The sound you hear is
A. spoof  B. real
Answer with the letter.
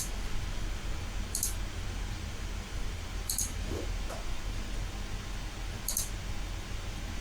B